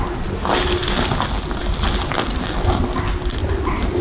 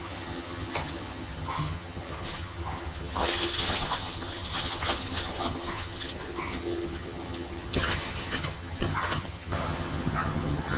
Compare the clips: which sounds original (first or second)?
first